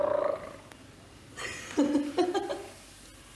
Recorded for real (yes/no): yes